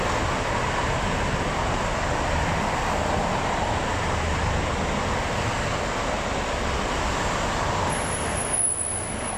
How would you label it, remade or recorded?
recorded